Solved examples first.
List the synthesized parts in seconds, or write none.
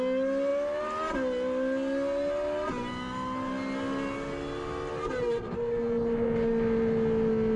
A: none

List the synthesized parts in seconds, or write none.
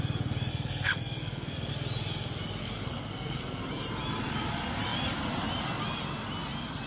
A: 0.5-1.7; 2.6-3.6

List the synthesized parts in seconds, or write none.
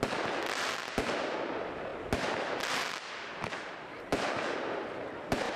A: none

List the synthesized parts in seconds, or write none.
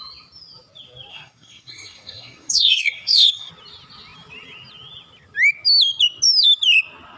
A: 1.1-3.5